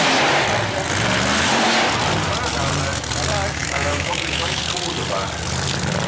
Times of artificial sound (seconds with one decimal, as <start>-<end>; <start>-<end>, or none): 3.6-4.6